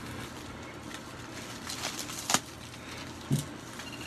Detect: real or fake real